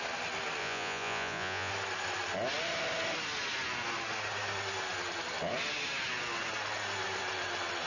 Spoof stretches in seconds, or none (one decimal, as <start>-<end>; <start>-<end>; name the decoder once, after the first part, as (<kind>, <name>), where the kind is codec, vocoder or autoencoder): 0.6-1.7 (vocoder, Vocos)